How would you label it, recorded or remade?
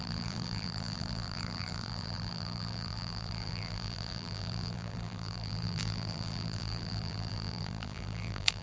remade